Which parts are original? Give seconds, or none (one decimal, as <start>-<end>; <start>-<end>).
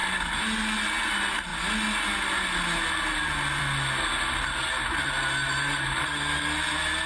0.0-7.1